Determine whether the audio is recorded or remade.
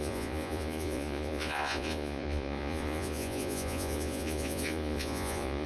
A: remade